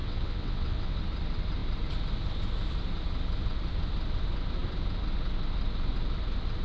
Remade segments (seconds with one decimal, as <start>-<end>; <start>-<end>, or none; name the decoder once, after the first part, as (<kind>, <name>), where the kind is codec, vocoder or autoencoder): 0.0-1.0 (vocoder, WaveNeXt)